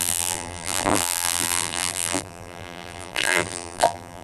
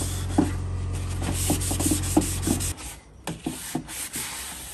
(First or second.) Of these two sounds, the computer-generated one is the first